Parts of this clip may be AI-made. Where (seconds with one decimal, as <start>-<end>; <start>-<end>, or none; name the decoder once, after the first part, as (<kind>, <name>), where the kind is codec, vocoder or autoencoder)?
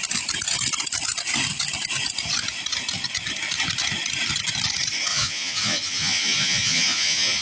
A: 5.1-7.4 (vocoder, Vocos)